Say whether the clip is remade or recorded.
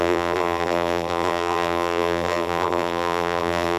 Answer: remade